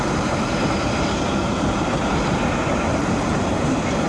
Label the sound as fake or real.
fake